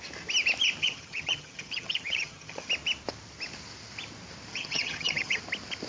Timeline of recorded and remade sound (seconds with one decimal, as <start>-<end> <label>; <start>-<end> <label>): 0.0-0.8 recorded; 0.8-2.7 remade; 2.7-4.5 recorded; 4.5-5.4 remade; 5.4-5.9 recorded